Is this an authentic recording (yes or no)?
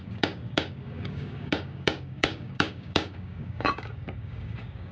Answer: no